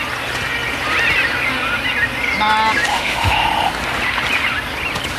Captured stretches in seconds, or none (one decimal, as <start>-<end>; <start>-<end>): 0.0-2.9; 3.7-5.2